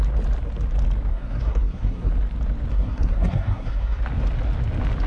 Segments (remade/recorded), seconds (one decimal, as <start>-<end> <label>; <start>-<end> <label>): 0.0-1.1 recorded; 1.1-2.1 remade; 2.1-2.7 recorded; 2.7-4.0 remade; 4.0-5.1 recorded